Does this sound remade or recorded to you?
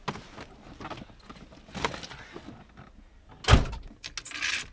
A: recorded